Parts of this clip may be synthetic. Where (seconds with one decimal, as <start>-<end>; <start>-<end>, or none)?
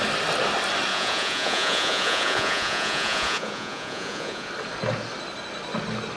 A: 0.9-4.5